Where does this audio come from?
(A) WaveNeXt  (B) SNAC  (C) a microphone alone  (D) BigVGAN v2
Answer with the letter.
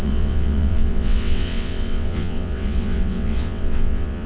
A